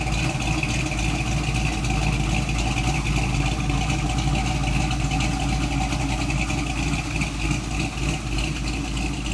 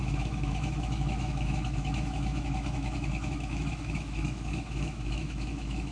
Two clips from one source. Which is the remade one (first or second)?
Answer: second